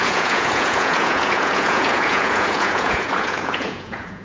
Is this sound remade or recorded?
remade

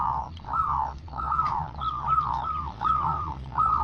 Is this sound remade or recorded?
remade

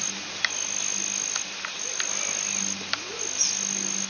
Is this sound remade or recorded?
recorded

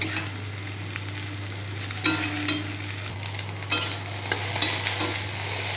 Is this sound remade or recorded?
recorded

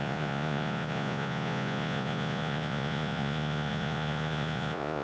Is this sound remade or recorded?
remade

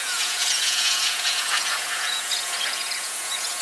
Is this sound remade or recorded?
remade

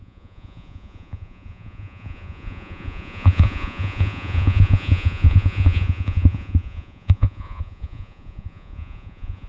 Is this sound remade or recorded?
remade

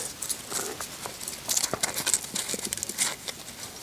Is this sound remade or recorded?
recorded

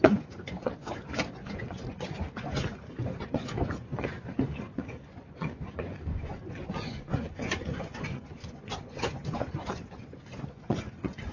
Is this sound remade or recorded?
remade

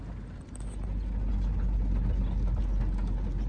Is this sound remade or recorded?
recorded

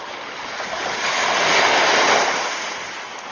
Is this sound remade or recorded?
recorded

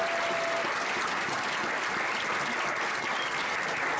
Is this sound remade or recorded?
recorded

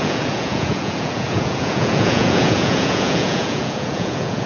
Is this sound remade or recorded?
remade